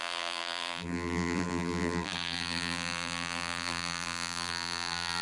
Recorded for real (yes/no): no